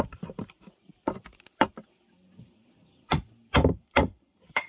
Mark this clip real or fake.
fake